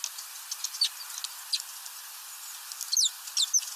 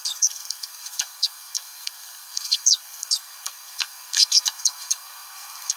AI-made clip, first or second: second